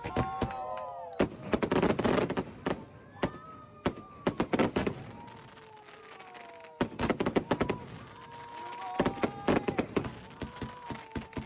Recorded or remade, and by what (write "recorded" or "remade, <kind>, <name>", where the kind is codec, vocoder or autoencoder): recorded